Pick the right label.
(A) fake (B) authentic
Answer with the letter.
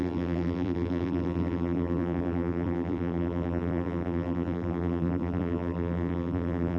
A